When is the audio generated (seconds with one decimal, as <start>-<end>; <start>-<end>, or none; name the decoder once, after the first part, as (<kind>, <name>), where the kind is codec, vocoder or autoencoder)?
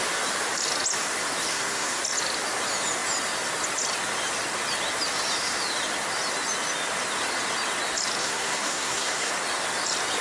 1.5-2.0 (codec, SNAC); 8.2-9.3